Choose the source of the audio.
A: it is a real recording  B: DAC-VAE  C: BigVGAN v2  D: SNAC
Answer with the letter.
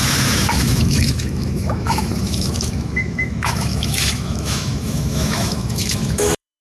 B